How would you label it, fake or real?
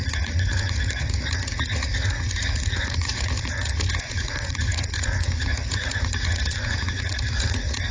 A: fake